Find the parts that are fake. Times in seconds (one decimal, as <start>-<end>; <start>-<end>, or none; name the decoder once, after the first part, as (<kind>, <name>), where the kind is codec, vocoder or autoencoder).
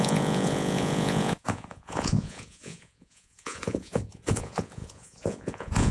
0.0-5.9 (vocoder, Vocos)